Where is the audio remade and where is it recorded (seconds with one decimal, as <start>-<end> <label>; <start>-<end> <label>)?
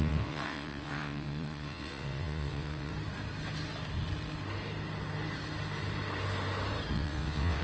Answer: 0.0-2.9 remade; 2.9-6.9 recorded; 6.9-7.6 remade